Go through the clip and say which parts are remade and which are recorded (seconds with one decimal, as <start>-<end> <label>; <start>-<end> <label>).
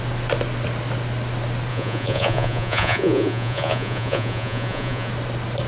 0.0-1.7 recorded; 1.7-5.1 remade; 5.1-5.7 recorded